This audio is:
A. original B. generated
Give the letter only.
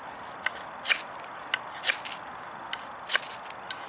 A